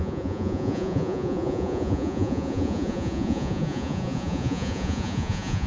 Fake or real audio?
fake